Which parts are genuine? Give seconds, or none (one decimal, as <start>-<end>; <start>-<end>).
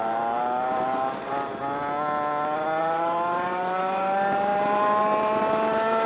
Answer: 1.5-2.8